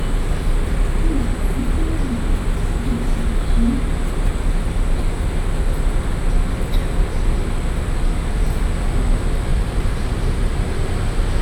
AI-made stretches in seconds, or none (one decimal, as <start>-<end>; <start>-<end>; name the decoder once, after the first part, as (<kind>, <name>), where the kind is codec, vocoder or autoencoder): 9.5-10.9 (vocoder, BigVGAN v2)